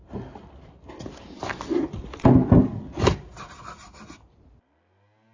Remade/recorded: recorded